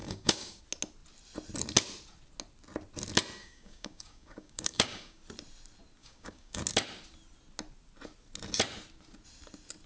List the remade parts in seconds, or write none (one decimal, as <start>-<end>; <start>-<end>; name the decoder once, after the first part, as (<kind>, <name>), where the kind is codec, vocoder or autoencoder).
0.0-0.6 (codec, DAC); 3.4-5.2; 6.0-6.6